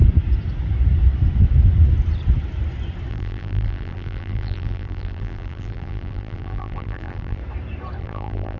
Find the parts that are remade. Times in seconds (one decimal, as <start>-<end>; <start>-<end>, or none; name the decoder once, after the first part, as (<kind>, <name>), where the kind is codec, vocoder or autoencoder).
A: 3.1-7.4 (vocoder, BigVGAN v2); 8.0-8.6